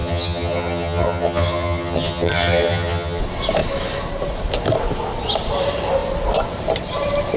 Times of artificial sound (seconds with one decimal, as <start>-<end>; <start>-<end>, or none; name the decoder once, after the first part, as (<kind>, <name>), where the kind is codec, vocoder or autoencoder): 0.0-3.2 (vocoder, HiFi-GAN)